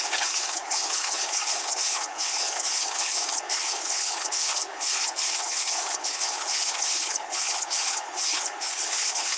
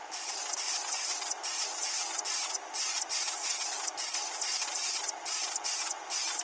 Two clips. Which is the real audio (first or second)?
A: second